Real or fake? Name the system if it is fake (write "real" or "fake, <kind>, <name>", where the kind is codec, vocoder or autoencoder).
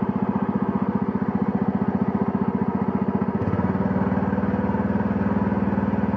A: real